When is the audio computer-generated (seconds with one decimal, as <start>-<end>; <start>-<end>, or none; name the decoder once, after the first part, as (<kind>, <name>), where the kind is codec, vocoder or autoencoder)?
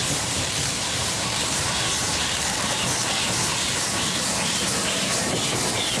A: 0.0-1.7 (vocoder, BigVGAN v2); 3.5-4.2